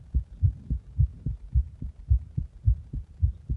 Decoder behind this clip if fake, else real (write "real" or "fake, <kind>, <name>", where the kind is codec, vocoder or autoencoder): real